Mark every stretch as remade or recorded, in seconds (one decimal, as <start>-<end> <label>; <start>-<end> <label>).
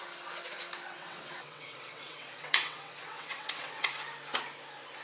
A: 0.0-0.9 recorded; 0.9-3.9 remade; 3.9-5.0 recorded